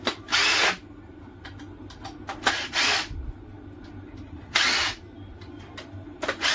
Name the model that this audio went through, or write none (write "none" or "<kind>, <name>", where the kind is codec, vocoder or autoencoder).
none